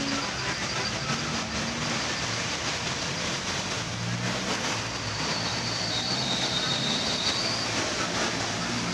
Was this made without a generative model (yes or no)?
yes